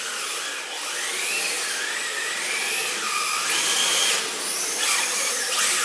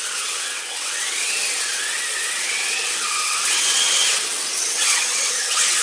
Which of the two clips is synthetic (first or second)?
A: second